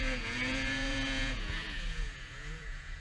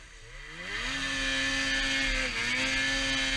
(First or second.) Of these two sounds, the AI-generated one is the first